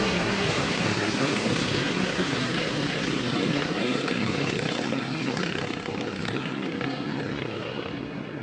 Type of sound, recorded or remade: remade